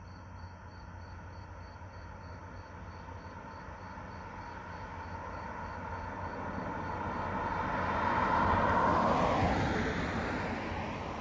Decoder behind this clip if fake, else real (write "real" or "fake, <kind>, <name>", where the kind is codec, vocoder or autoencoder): real